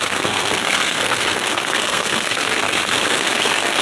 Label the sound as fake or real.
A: fake